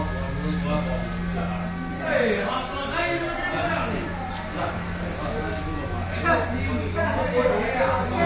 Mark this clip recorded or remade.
recorded